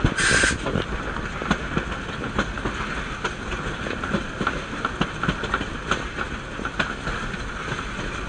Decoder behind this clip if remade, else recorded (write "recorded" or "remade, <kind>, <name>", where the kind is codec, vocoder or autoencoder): recorded